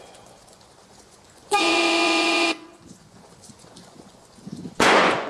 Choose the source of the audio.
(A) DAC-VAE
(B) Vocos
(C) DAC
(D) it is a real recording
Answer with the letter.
B